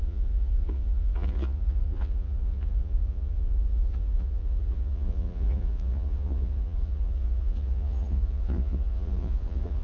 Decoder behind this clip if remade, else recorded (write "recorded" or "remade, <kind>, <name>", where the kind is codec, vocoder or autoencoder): remade, vocoder, Vocos